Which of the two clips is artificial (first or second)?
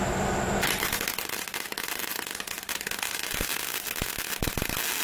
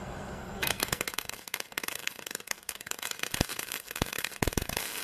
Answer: second